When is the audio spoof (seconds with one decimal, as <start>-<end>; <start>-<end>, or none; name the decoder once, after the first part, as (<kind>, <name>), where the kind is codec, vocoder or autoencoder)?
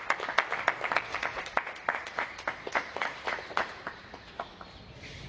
1.3-4.5 (vocoder, Vocos)